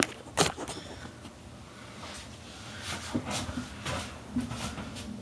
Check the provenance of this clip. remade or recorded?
recorded